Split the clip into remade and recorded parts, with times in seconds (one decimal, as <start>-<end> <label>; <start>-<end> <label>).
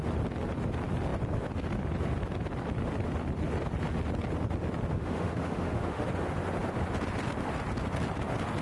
0.0-4.9 recorded; 4.9-6.0 remade; 6.0-8.6 recorded